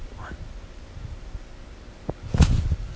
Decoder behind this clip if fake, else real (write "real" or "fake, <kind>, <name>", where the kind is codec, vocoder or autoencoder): real